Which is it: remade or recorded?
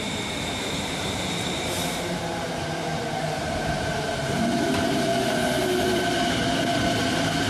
remade